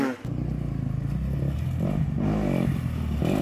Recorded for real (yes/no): yes